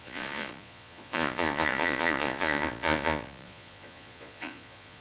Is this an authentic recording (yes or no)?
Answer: no